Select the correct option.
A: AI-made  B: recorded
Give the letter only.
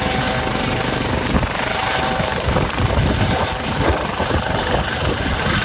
A